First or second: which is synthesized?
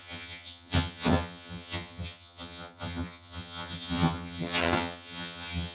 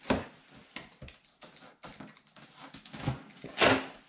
first